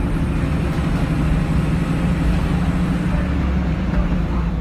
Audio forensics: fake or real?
real